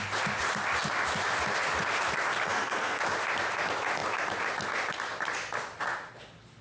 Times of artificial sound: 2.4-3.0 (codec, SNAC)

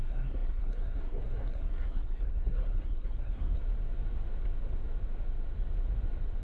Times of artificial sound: 0.0-3.6 (codec, SNAC)

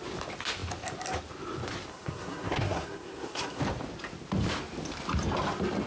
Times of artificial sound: 1.9-3.6 (codec, SNAC)

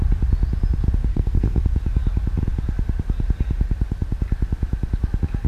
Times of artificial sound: 1.1-1.6 (codec, SNAC)

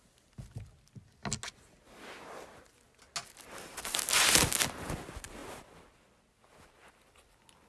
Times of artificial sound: none

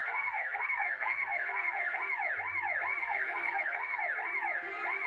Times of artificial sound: 0.0-2.0 (codec, SNAC); 3.0-4.0

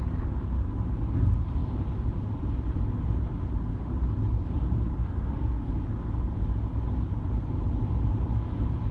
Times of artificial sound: 5.0-5.7 (codec, SNAC)